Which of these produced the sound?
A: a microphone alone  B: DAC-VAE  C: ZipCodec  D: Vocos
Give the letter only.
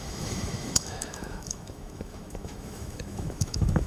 B